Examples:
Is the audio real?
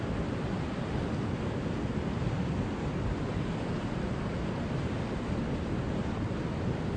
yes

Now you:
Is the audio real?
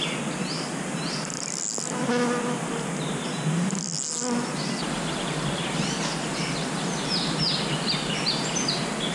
yes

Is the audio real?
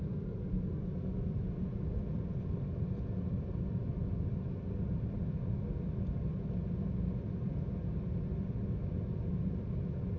yes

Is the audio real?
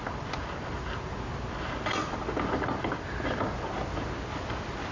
yes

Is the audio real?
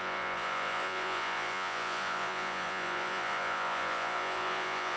no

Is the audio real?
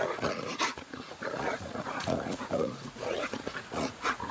no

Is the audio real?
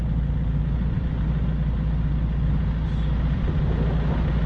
yes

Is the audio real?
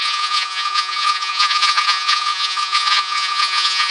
no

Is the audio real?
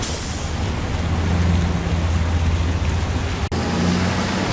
yes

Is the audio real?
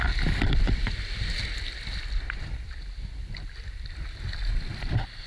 yes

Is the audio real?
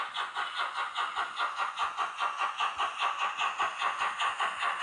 no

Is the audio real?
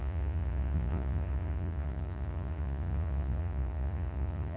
no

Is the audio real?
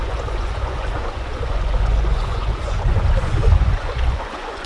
no